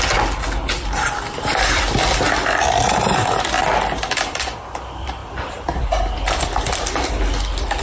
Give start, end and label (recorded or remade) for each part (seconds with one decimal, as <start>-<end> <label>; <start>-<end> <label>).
0.0-7.8 recorded